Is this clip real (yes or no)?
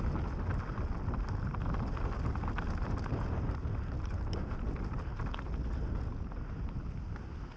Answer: yes